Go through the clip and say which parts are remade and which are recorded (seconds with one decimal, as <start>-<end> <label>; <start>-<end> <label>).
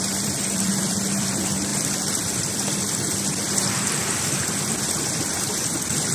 0.0-6.1 remade